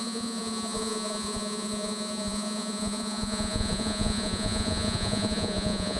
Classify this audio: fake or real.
fake